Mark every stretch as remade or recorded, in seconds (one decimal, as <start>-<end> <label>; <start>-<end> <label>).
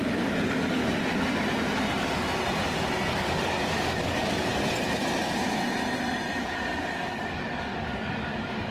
0.0-0.8 remade; 0.8-3.1 recorded; 3.1-4.5 remade; 4.5-6.4 recorded; 6.4-8.7 remade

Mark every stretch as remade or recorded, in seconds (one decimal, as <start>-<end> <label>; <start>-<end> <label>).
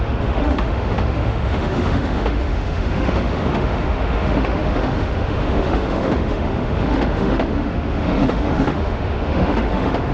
0.0-10.1 remade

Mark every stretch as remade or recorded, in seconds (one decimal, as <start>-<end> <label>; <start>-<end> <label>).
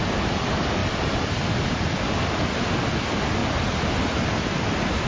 0.0-5.1 recorded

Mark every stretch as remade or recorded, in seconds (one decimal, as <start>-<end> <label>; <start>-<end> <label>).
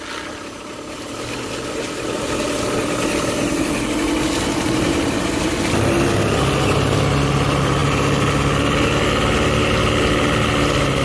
0.0-11.0 recorded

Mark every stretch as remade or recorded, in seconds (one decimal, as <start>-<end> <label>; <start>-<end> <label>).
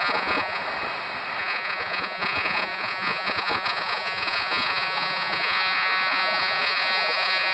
0.0-0.6 remade; 0.6-1.4 recorded; 1.4-7.5 remade